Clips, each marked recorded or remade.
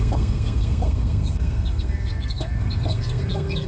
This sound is remade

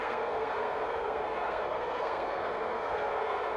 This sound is remade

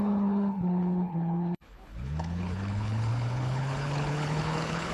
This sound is remade